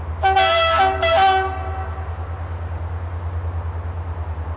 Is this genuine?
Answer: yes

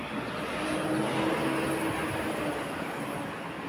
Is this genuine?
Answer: yes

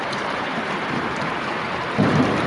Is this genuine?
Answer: no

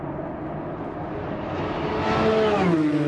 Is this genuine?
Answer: yes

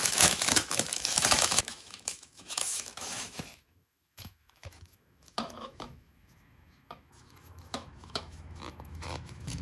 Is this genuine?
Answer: no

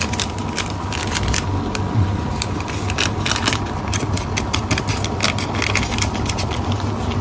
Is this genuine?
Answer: yes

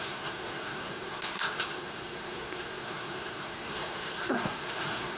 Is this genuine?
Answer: no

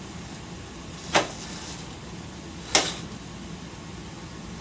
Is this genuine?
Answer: yes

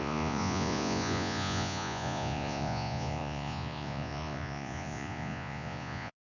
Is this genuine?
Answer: no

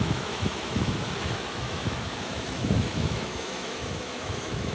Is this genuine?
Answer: no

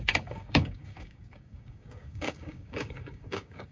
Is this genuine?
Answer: no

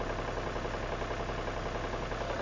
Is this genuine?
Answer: yes